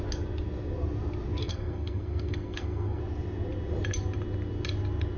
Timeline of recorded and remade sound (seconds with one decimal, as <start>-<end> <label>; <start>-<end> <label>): 0.0-1.4 recorded; 1.4-3.0 remade; 3.0-5.2 recorded